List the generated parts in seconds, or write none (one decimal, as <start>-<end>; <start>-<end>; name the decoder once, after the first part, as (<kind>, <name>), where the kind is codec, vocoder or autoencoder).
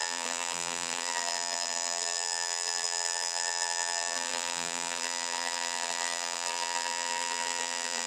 0.0-8.1 (vocoder, BigVGAN v2)